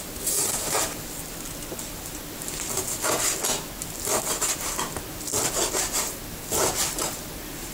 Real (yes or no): yes